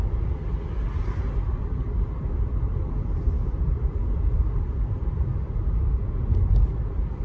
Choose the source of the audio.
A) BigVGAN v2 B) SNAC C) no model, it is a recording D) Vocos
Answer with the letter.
A